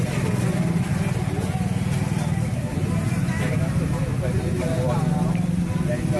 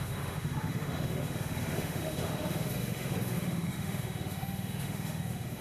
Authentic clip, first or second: first